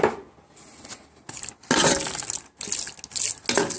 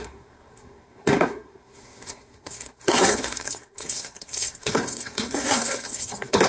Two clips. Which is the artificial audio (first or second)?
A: second